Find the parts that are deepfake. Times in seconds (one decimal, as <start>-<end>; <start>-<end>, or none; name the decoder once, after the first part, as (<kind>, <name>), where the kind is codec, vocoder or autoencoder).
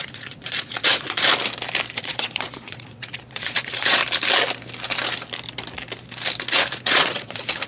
0.0-1.3 (vocoder, Vocos); 2.0-4.0; 6.7-7.7